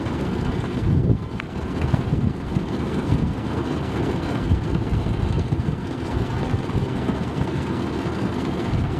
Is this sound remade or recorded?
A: remade